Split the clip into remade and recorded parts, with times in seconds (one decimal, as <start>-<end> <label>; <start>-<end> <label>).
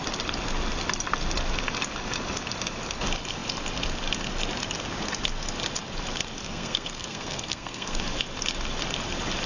0.0-6.4 recorded; 6.4-8.0 remade; 8.0-9.5 recorded